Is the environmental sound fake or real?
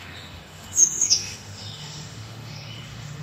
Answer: fake